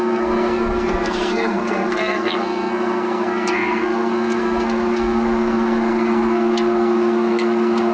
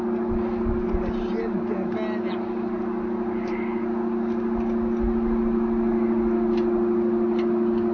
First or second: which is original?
second